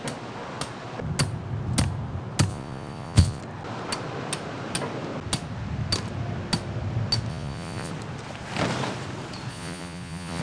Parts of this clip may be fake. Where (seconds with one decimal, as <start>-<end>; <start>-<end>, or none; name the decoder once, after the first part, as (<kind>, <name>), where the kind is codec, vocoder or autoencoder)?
2.5-3.4 (vocoder, Vocos); 7.3-7.9; 9.5-10.4